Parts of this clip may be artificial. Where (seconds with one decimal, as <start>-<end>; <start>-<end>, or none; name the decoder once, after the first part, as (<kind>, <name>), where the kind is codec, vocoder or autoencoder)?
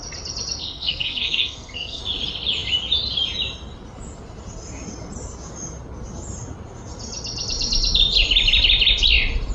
0.6-2.0 (codec, SNAC)